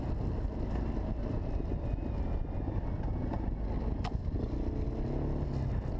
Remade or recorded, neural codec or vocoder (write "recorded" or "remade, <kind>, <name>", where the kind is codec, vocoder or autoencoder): recorded